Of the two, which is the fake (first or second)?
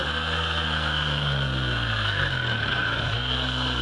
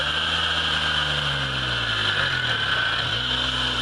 first